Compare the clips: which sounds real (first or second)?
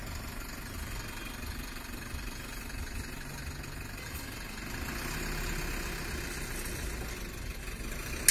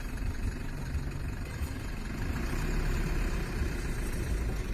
first